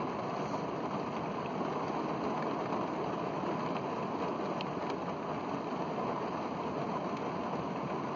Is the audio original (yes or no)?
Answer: yes